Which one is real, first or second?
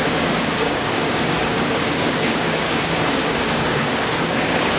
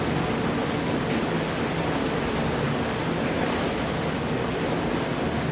second